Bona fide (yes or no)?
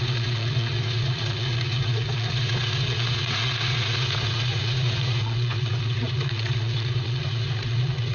no